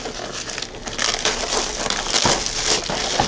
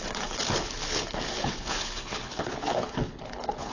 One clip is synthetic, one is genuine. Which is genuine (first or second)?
first